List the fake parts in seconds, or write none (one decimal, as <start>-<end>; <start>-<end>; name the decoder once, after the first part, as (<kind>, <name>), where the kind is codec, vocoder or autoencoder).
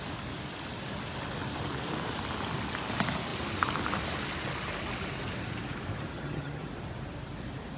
6.1-6.7 (vocoder, HiFi-GAN)